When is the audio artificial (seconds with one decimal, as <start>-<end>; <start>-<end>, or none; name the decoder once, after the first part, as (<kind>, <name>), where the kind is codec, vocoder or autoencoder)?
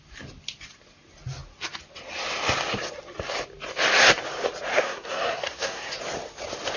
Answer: 4.7-5.9 (codec, SNAC)